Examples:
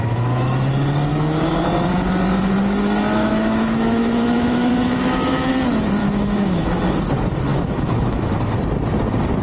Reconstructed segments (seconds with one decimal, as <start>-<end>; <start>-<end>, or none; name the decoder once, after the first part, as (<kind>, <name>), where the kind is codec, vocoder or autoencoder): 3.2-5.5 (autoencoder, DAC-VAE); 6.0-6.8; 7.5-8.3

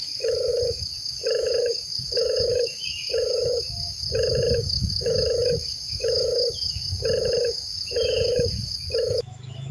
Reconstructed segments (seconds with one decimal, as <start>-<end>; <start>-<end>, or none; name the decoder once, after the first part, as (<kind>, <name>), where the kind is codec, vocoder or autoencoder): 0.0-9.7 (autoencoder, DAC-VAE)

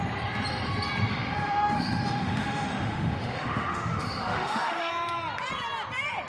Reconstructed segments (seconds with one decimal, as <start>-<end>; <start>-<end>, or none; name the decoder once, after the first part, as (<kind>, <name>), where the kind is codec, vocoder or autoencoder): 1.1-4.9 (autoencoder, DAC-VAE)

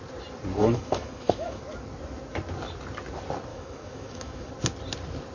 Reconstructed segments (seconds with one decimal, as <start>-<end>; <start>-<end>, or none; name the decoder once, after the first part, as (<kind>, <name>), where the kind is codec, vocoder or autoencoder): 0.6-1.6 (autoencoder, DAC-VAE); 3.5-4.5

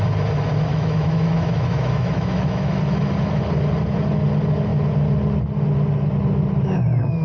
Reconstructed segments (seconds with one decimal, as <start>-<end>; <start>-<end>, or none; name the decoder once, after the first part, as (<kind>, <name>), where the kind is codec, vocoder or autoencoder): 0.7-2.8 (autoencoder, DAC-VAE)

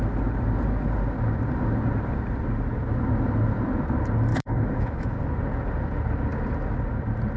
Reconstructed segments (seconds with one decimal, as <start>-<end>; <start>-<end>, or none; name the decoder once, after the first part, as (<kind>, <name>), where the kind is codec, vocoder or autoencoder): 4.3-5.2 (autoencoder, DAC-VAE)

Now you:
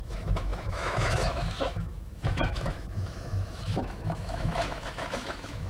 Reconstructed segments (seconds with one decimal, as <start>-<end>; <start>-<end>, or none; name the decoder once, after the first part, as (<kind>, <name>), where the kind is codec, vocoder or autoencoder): 0.0-5.7 (autoencoder, DAC-VAE)